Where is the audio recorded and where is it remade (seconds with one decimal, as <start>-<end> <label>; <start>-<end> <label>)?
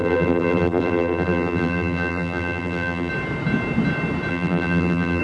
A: 0.0-3.1 remade; 3.1-4.3 recorded; 4.3-5.2 remade